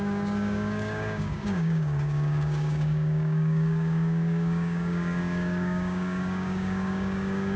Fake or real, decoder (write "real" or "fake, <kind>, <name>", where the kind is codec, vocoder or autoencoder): fake, codec, DAC